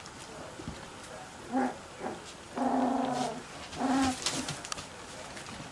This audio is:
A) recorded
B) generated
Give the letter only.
A